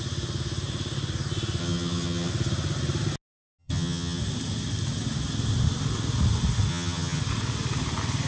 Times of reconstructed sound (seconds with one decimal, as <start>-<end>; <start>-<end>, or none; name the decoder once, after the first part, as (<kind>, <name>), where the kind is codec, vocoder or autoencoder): 1.6-2.3 (vocoder, HiFi-GAN); 3.6-4.2; 6.7-7.2